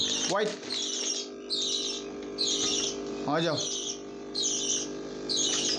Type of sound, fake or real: real